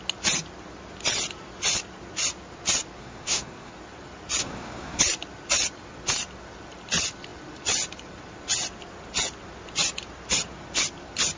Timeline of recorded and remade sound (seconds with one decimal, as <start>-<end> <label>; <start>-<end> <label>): 0.0-3.0 recorded; 3.0-3.7 remade; 3.7-4.4 recorded; 4.4-5.0 remade; 5.0-11.4 recorded